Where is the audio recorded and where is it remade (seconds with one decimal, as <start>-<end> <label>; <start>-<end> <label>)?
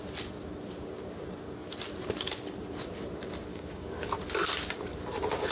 0.0-3.5 recorded; 3.5-4.1 remade; 4.1-5.5 recorded